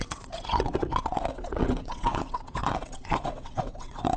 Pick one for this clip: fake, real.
fake